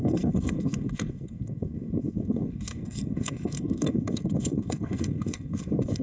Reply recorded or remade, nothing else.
remade